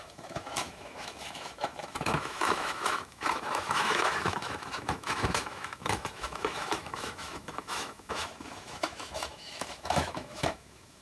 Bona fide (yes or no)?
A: no